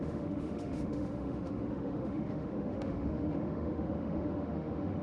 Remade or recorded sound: remade